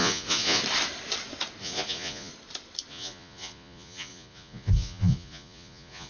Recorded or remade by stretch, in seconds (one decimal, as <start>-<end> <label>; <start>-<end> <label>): 0.0-0.6 remade; 0.6-1.6 recorded; 1.6-2.3 remade; 2.3-2.9 recorded; 2.9-6.1 remade